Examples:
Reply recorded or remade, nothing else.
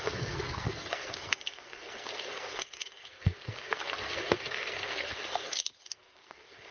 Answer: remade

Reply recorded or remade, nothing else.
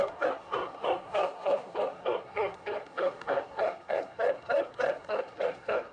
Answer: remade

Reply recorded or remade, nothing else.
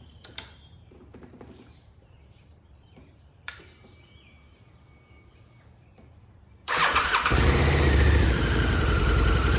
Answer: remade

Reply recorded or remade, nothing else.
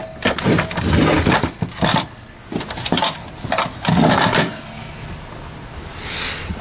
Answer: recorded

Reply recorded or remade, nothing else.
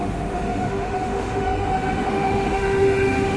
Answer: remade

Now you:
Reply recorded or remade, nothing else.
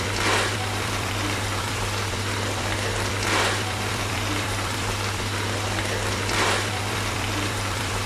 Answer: remade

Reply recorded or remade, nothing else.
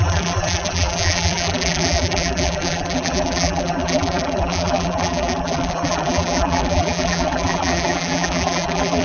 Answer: remade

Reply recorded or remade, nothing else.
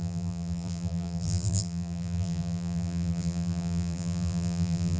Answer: remade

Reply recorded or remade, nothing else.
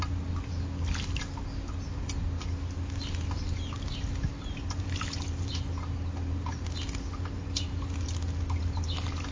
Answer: recorded